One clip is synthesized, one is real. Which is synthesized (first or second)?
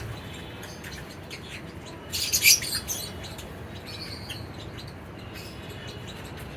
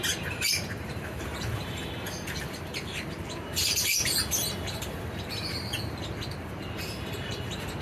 second